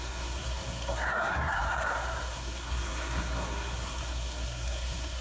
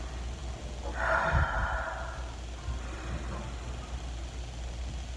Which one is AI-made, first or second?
first